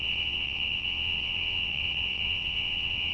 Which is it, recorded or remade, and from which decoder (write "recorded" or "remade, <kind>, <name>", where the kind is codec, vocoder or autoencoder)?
remade, vocoder, WaveNeXt